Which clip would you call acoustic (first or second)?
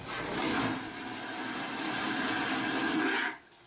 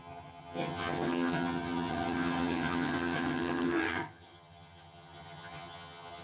first